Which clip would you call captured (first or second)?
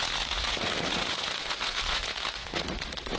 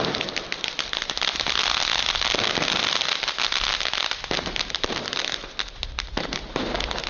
second